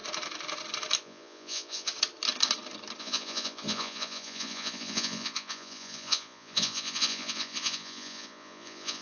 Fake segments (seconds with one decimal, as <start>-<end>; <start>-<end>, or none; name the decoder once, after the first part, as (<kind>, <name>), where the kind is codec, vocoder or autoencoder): 1.0-1.9 (vocoder, Vocos); 3.0-9.0